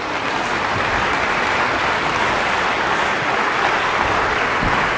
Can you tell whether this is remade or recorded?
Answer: recorded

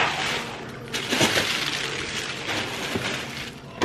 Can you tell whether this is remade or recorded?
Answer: recorded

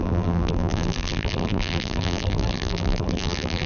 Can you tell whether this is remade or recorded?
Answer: remade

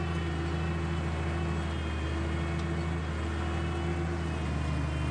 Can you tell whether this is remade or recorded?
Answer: recorded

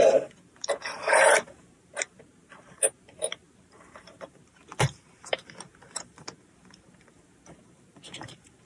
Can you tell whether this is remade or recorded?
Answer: remade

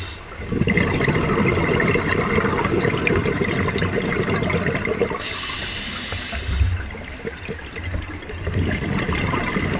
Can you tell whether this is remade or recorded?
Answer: recorded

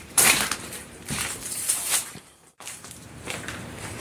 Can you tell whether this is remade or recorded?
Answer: remade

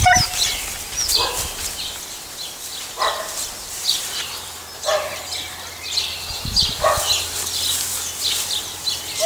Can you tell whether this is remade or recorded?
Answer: recorded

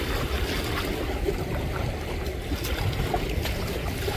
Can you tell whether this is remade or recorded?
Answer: recorded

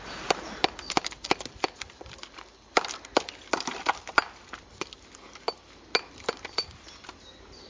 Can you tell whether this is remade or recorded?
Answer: recorded